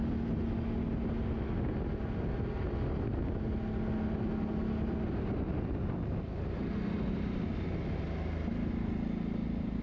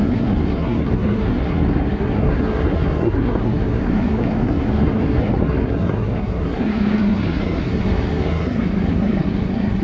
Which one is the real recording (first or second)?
first